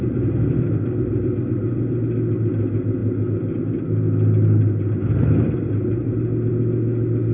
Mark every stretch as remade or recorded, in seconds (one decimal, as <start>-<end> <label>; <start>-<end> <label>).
0.0-7.3 recorded